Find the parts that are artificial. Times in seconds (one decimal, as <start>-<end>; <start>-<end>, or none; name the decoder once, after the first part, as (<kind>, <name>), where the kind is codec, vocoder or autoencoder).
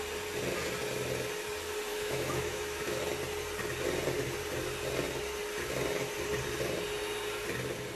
1.9-3.0 (autoencoder, DAC-VAE)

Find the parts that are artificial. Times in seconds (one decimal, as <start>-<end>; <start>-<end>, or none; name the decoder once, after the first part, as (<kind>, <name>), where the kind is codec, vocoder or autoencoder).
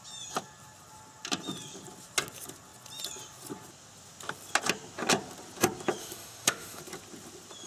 6.0-6.8 (autoencoder, DAC-VAE)